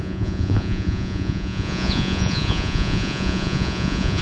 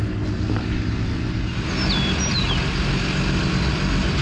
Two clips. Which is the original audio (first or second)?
second